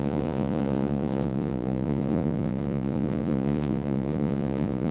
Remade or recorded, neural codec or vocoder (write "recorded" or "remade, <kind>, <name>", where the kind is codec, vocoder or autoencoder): remade, vocoder, Vocos